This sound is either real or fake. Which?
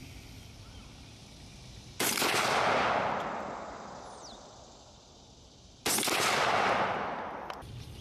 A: real